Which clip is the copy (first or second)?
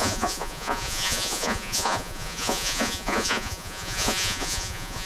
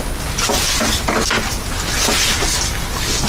first